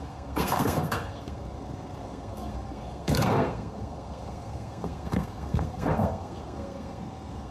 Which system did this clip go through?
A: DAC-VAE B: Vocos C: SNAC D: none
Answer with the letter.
C